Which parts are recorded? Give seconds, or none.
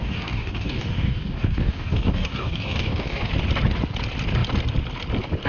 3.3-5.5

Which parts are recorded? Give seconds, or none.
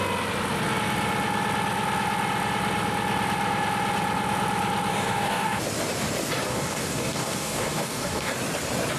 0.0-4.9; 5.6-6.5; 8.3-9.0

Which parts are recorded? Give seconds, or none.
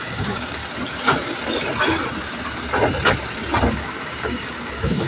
0.6-3.7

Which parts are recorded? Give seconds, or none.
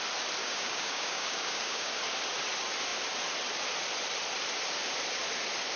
0.0-0.4; 2.0-5.8